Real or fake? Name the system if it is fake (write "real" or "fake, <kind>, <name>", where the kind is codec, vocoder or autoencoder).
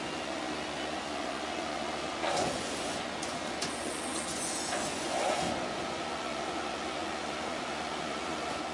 fake, vocoder, Vocos